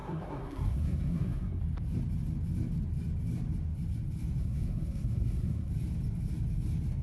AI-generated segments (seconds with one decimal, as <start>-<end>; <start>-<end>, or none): 0.0-1.6; 4.4-5.7

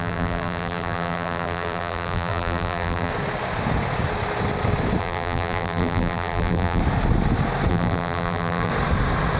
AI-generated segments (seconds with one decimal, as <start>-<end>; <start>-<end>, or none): 0.0-3.1; 5.0-6.8; 7.7-8.7

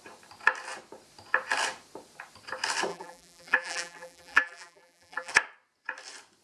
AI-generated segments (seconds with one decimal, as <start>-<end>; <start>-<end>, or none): 2.9-5.3

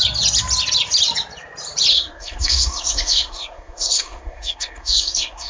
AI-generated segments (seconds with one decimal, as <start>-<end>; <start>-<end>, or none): 1.9-5.5

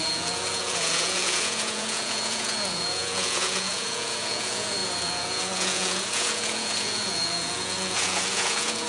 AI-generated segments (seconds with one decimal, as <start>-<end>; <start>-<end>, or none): 0.0-8.9

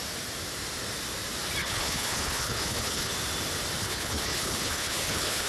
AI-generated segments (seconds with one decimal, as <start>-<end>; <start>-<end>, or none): 1.6-3.1; 3.8-5.5

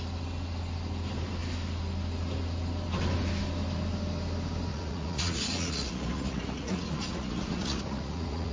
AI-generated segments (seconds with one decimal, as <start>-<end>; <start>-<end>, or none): 4.7-8.5